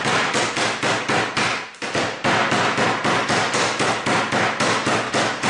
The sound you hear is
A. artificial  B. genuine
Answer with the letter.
B